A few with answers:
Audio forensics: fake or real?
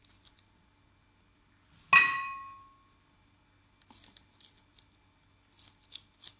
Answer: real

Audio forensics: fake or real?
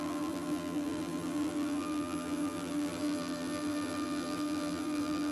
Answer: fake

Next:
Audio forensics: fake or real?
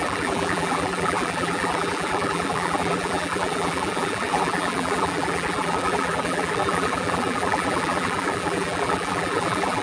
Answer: fake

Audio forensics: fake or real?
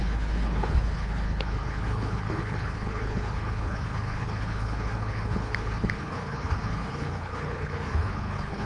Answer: fake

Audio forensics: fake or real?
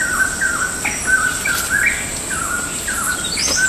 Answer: real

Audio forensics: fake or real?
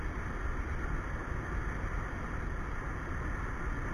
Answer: real